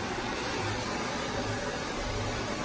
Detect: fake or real real